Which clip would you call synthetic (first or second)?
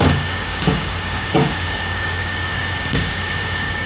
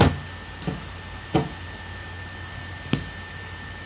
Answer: first